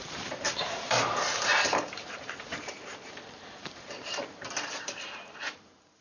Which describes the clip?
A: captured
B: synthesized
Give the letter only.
B